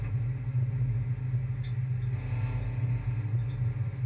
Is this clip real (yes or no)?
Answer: yes